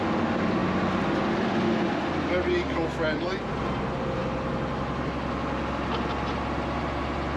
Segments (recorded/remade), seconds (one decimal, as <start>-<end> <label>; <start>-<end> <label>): 0.0-7.4 recorded